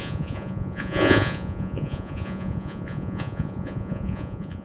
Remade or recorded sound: remade